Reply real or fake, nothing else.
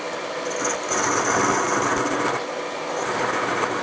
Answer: real